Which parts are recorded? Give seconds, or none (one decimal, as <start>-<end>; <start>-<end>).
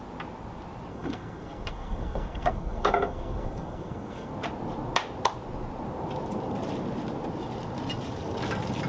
0.0-0.9; 4.3-8.9